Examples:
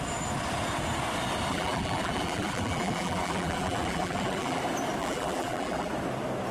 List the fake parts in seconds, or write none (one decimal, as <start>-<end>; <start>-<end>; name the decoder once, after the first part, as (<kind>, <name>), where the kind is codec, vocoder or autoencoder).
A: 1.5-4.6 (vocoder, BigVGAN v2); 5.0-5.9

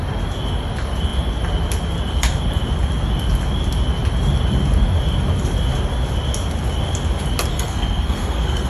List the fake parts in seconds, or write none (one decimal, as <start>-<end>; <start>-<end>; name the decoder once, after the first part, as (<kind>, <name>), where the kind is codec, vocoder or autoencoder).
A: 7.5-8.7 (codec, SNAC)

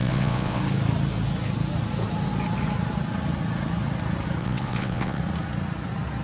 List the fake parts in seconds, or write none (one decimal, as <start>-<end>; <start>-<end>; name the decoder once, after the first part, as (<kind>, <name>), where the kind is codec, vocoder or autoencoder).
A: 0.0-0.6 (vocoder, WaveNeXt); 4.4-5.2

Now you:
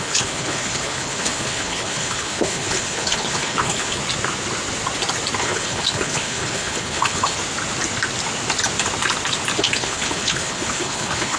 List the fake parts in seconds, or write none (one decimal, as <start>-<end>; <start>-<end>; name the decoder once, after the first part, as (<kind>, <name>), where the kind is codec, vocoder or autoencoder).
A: 0.0-4.0 (codec, HILCodec); 5.4-7.4; 9.6-11.4